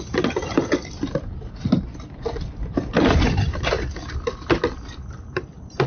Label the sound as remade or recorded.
recorded